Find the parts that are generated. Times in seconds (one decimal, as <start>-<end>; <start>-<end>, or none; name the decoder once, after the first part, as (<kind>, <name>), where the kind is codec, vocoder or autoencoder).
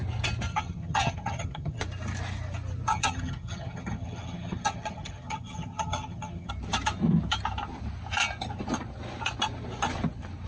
0.5-1.8 (vocoder, HiFi-GAN); 2.9-6.5